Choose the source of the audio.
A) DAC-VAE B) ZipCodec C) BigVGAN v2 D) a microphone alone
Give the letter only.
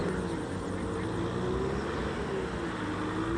D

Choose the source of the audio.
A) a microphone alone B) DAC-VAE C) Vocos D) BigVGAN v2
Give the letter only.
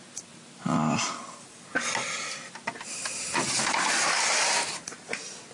A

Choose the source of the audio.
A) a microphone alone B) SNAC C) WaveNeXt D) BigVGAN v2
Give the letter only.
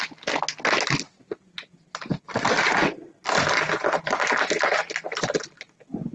A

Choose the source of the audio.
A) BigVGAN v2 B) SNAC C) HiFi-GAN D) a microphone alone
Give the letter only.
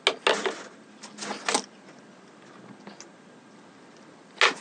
D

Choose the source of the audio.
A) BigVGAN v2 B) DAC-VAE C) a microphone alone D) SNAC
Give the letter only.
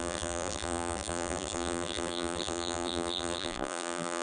A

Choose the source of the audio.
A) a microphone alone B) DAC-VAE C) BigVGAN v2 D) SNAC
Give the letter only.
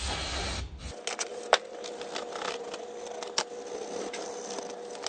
A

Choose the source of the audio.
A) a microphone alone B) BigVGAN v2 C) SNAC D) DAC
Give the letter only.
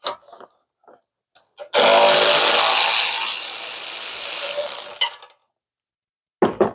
A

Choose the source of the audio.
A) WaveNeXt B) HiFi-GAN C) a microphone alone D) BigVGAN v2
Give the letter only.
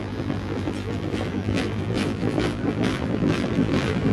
D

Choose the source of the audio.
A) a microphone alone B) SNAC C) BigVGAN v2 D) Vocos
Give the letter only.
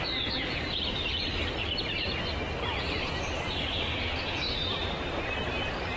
C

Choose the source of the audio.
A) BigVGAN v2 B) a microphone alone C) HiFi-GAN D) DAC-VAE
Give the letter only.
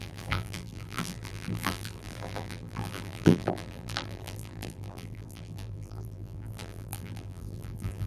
A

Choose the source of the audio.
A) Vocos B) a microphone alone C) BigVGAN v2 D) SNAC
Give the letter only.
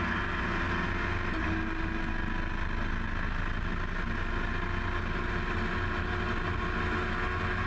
B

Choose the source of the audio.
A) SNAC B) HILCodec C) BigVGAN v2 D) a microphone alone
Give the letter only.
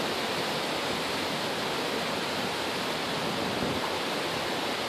D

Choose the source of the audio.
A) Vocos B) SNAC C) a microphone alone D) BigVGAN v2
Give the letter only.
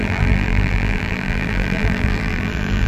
D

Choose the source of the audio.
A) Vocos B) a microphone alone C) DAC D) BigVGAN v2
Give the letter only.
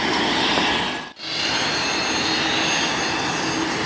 B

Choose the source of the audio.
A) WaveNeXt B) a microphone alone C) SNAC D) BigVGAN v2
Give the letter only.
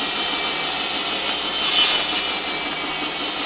B